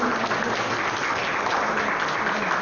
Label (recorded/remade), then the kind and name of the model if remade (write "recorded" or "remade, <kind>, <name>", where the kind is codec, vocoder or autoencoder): recorded